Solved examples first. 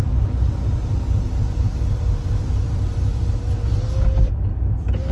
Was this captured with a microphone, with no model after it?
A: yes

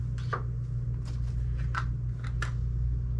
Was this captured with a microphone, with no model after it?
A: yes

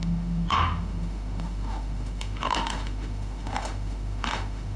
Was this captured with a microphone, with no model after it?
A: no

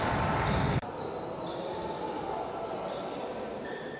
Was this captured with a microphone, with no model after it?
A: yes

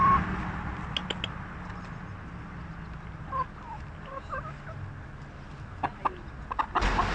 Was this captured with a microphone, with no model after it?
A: yes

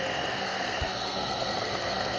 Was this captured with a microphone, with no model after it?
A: no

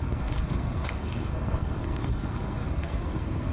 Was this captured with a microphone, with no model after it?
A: no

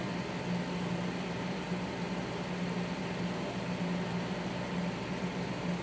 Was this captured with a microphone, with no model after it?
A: yes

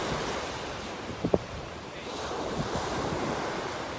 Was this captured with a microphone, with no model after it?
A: no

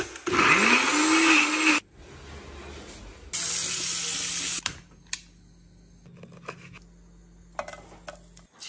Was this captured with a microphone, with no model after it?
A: yes